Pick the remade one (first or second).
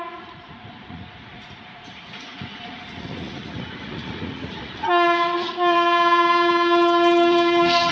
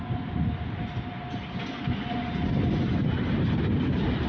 first